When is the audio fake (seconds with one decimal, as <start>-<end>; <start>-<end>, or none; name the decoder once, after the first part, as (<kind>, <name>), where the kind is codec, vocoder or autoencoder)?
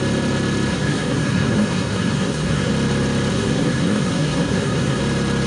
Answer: 0.7-2.7 (codec, SNAC); 3.3-5.0